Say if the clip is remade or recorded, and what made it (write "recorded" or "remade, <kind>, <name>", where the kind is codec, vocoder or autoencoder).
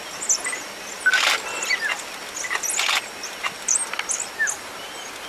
recorded